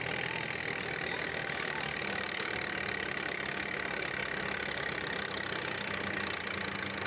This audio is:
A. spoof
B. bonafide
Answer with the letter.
B